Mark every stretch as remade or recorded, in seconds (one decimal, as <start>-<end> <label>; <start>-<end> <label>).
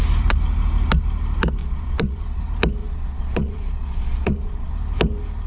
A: 0.0-1.6 recorded; 1.6-2.4 remade; 2.4-2.8 recorded; 2.8-4.7 remade; 4.7-5.5 recorded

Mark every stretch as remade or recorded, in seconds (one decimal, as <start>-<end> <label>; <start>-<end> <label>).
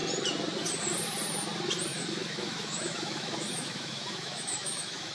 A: 0.0-1.9 recorded; 1.9-5.1 remade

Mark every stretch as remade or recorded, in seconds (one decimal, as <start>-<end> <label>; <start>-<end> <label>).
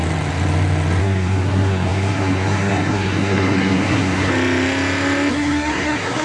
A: 0.0-1.0 recorded; 1.0-4.3 remade; 4.3-5.3 recorded; 5.3-6.2 remade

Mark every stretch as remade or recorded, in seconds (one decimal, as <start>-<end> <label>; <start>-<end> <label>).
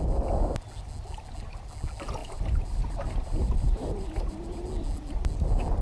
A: 0.0-2.2 recorded; 2.2-4.6 remade; 4.6-5.8 recorded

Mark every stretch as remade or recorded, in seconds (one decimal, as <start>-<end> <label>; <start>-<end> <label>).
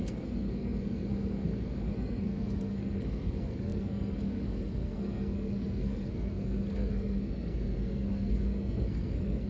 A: 0.0-9.5 remade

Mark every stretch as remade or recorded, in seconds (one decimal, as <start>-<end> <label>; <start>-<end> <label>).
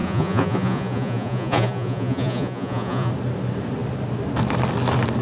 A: 0.0-3.1 remade; 3.1-5.2 recorded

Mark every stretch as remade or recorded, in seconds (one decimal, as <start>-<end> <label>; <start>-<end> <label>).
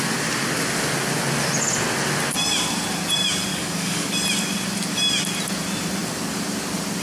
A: 0.0-3.5 recorded; 3.5-4.1 remade; 4.1-7.0 recorded